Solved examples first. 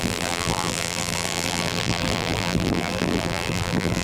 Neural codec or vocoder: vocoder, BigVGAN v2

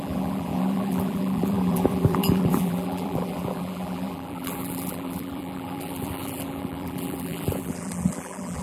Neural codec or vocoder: vocoder, BigVGAN v2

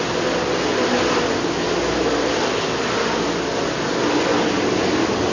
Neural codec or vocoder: none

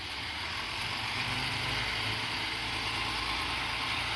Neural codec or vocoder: none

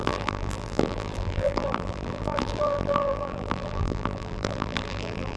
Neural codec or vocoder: vocoder, BigVGAN v2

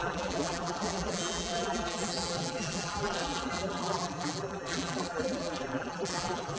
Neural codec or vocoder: vocoder, BigVGAN v2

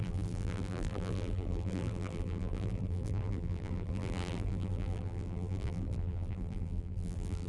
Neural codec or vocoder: vocoder, BigVGAN v2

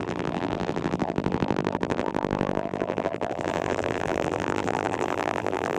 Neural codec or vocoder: vocoder, BigVGAN v2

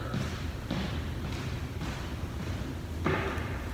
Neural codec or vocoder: vocoder, BigVGAN v2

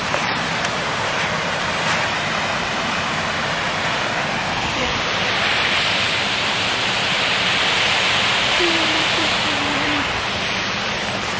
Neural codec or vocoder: vocoder, BigVGAN v2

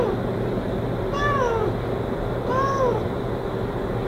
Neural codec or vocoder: none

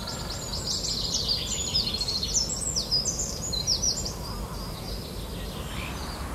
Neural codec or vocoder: none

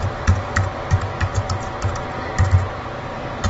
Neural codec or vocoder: none